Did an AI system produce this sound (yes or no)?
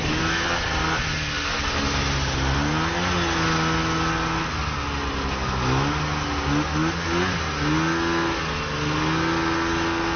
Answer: no